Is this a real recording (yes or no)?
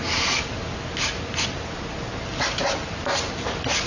yes